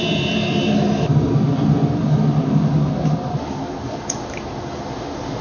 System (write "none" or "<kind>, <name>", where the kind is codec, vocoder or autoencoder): none